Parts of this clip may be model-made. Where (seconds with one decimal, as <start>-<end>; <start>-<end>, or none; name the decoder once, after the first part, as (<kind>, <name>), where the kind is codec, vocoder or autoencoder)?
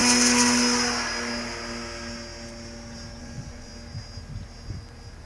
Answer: 3.2-3.7 (vocoder, Vocos)